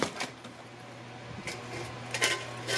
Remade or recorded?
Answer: recorded